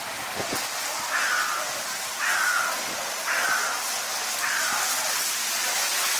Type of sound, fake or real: fake